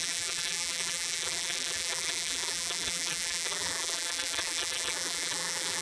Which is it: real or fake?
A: fake